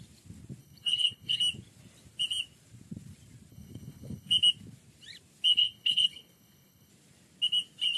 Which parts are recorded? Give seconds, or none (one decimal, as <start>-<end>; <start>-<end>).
0.0-0.6; 1.4-3.5; 4.3-5.5; 6.9-8.0